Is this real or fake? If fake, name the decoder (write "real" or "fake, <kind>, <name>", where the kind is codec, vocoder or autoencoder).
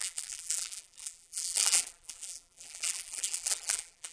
fake, vocoder, BigVGAN v2